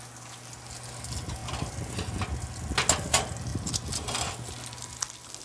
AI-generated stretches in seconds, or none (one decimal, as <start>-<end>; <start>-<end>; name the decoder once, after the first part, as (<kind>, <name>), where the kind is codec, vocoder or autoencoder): none